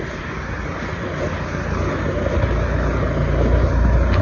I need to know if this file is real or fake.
real